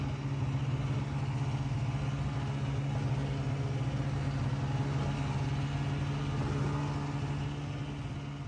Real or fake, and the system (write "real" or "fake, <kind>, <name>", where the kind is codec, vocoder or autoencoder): real